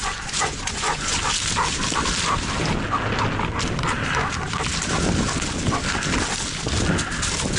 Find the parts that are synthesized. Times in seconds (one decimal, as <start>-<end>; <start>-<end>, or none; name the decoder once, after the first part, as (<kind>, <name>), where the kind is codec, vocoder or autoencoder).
0.0-1.2 (vocoder, Vocos)